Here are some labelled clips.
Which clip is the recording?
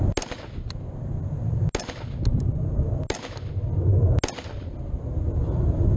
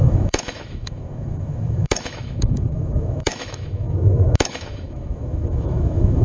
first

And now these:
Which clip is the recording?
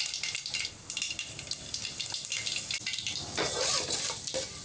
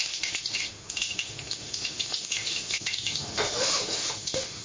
first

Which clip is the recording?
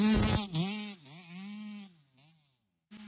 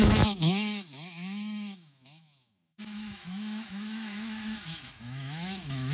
first